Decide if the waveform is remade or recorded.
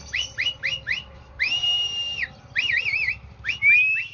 recorded